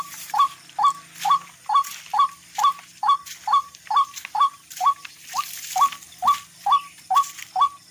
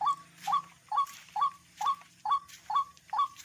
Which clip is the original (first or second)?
first